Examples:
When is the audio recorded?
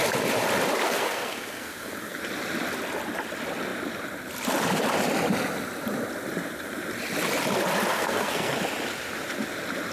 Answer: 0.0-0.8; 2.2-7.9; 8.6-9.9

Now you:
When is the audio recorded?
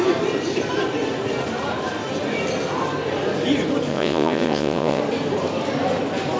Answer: 0.0-3.9; 5.0-6.4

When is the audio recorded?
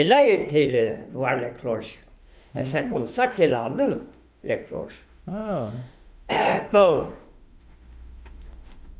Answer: 1.0-2.2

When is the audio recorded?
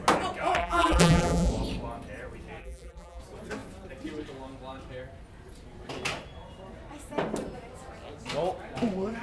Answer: 0.0-0.6; 1.5-2.6; 3.2-9.2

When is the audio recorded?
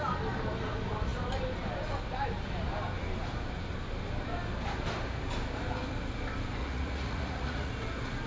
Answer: 0.0-6.6; 7.7-8.3